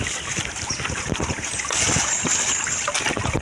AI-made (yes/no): no